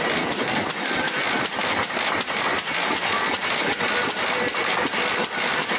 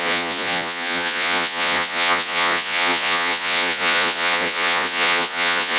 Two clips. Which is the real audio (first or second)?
first